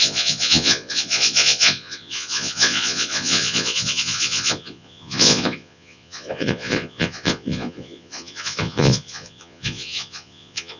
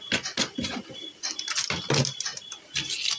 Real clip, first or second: second